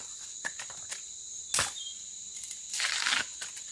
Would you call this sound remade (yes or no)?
no